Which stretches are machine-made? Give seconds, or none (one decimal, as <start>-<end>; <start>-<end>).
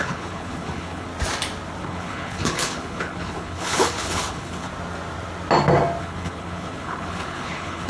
0.0-1.1; 1.8-4.7; 6.0-7.9